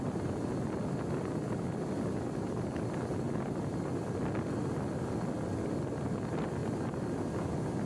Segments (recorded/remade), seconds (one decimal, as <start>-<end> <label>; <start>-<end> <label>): 0.0-7.9 recorded